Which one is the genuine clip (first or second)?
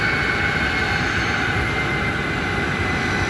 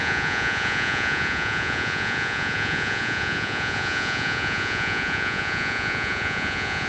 first